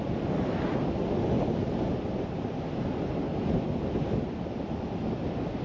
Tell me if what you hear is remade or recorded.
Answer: recorded